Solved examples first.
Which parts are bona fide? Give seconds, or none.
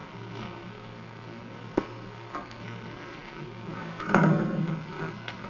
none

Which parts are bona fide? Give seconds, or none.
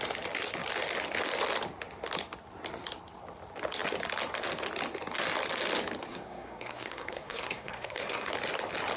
0.0-6.1; 8.3-9.0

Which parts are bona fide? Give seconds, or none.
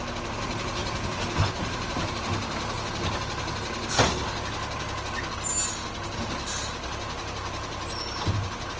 0.0-0.8; 2.2-8.8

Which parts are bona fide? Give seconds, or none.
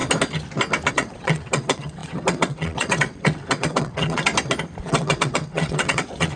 0.0-0.9; 4.3-4.8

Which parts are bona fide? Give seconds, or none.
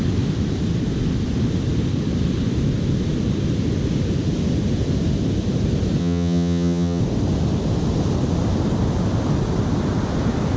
0.0-6.0; 7.0-10.6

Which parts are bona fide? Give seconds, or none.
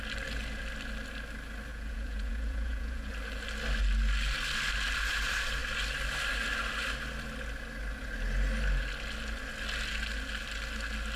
0.0-1.7; 3.1-11.2